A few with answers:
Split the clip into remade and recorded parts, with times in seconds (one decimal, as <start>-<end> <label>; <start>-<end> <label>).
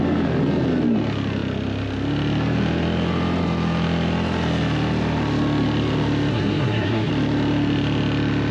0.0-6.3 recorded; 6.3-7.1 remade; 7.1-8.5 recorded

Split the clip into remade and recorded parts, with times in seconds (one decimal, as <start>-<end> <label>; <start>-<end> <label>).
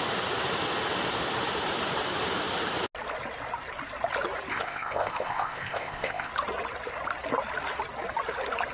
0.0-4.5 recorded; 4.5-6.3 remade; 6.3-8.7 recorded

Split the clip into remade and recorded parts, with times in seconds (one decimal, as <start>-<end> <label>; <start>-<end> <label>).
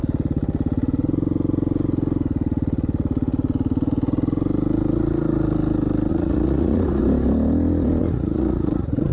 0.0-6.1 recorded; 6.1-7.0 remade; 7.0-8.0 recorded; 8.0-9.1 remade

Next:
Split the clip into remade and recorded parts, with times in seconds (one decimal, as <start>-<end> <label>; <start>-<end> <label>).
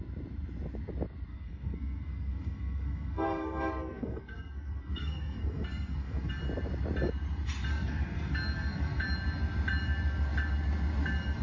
0.0-1.3 recorded; 1.3-6.3 remade; 6.3-7.7 recorded; 7.7-9.0 remade; 9.0-11.4 recorded